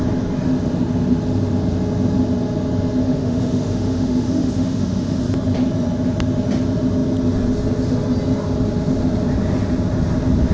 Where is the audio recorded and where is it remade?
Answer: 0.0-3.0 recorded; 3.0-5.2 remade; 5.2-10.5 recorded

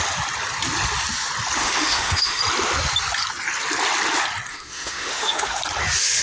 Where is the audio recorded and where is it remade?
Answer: 0.0-1.6 recorded; 1.6-2.4 remade; 2.4-4.5 recorded; 4.5-5.6 remade; 5.6-6.2 recorded

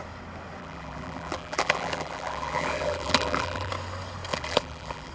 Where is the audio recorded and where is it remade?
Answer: 0.0-0.6 recorded; 0.6-3.7 remade; 3.7-4.3 recorded; 4.3-5.1 remade

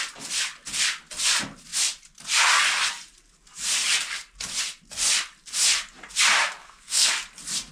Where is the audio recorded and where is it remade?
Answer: 0.0-6.6 recorded; 6.6-7.1 remade; 7.1-7.7 recorded

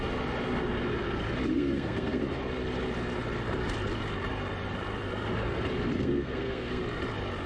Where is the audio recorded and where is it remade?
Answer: 0.0-1.5 recorded; 1.5-2.2 remade; 2.2-6.0 recorded; 6.0-6.8 remade; 6.8-7.5 recorded

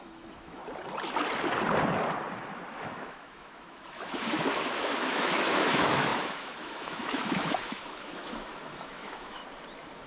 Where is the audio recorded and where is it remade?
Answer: 0.0-0.6 remade; 0.6-2.7 recorded; 2.7-9.4 remade; 9.4-10.1 recorded